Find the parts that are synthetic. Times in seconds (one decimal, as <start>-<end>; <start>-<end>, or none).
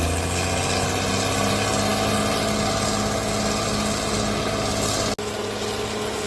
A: none